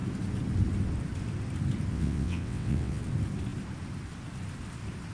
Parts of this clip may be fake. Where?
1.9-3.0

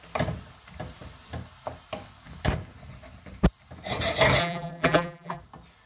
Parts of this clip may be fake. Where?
4.4-5.4

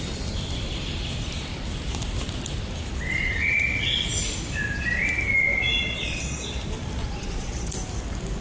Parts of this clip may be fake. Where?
5.5-6.5; 7.0-7.6

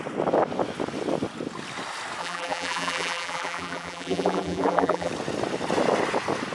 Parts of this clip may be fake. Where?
2.2-5.1

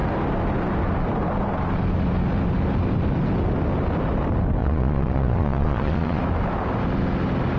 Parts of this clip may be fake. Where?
4.6-6.2

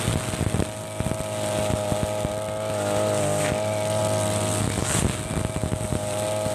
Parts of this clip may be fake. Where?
none

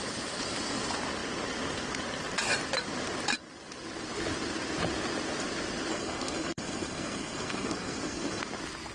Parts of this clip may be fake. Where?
5.9-8.4

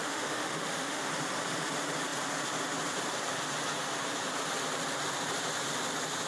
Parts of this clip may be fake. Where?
0.0-1.1